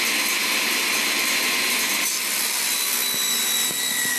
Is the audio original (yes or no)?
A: yes